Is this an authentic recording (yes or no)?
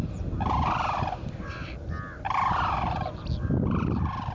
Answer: yes